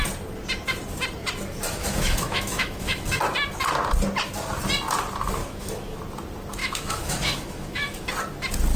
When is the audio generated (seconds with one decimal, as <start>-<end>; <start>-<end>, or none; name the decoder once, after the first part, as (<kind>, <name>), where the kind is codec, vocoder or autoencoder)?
1.8-3.2 (autoencoder, DAC-VAE); 5.4-6.0; 6.6-8.1